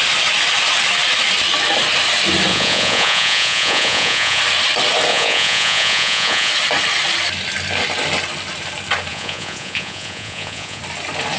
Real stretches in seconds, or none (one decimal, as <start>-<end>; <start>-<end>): 0.0-2.5; 4.4-5.1; 6.5-9.1; 10.8-11.4